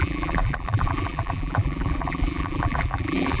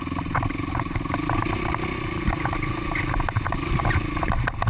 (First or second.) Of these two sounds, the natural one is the second